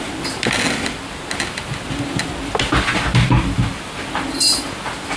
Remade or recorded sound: recorded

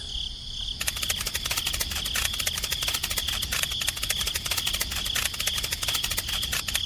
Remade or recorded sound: recorded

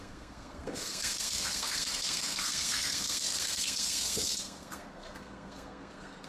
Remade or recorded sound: remade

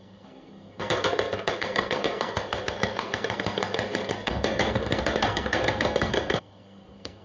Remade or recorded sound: remade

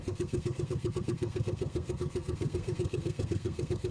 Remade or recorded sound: remade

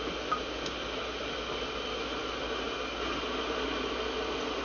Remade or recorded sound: recorded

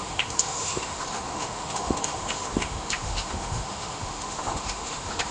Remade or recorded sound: remade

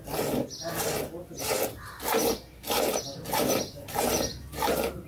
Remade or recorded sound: recorded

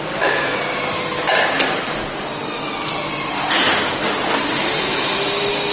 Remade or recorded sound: recorded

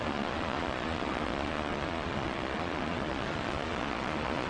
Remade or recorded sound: remade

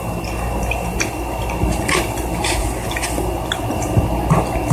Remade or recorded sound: recorded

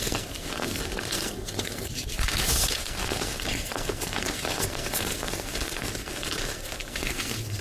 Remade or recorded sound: remade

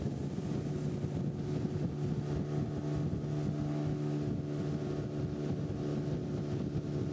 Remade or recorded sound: recorded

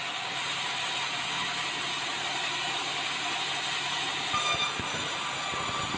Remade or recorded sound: recorded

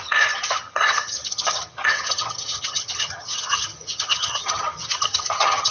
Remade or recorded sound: remade